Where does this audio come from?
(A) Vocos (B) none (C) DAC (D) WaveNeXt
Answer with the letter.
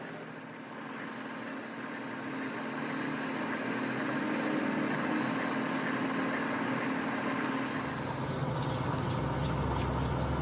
B